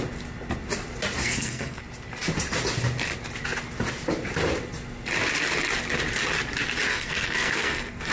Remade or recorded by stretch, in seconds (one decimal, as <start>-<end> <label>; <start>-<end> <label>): 0.0-1.2 recorded; 1.2-1.8 remade; 1.8-6.9 recorded; 6.9-8.1 remade